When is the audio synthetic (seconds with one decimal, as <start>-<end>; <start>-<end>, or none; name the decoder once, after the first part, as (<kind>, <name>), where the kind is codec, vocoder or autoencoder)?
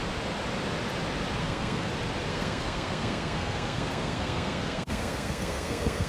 1.4-1.9 (codec, SNAC); 2.3-6.1